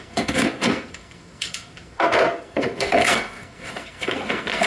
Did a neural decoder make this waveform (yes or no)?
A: yes